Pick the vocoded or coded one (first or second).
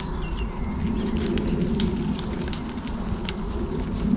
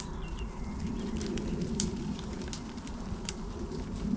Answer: second